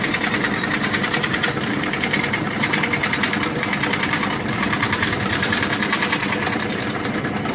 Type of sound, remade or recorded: remade